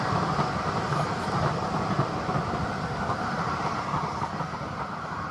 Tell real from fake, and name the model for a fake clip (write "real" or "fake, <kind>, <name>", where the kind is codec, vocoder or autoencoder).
fake, vocoder, BigVGAN v2